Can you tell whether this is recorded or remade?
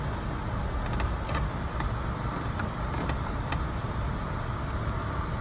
recorded